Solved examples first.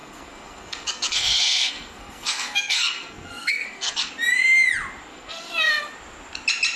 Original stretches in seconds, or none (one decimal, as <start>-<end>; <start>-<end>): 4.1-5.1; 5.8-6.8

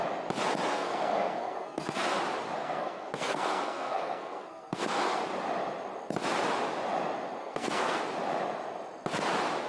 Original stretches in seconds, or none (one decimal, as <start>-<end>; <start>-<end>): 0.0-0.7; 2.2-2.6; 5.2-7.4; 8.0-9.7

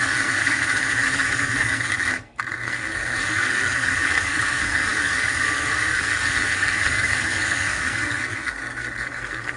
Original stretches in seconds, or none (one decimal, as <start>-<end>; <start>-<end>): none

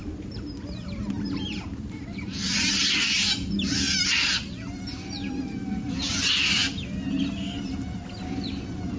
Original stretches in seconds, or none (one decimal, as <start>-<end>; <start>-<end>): 0.0-9.0

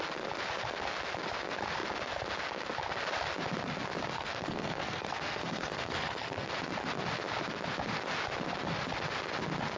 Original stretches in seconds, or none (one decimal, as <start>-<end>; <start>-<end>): 0.0-4.1; 6.5-9.8